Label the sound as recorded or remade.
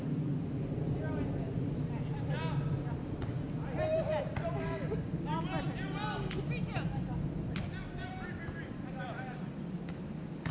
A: recorded